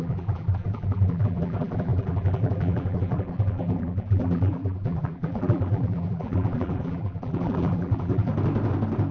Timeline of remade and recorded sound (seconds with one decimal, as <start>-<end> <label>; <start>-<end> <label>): 0.0-8.3 remade; 8.3-9.1 recorded